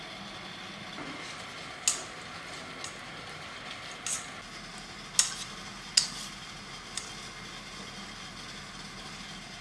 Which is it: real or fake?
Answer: real